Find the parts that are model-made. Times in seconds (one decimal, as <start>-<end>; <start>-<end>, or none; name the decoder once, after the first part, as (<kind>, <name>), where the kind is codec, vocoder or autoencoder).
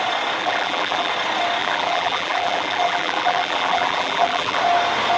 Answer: 0.4-1.1 (vocoder, BigVGAN v2); 1.6-4.6